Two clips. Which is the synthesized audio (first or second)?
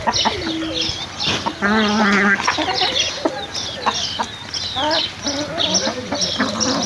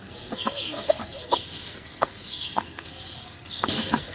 second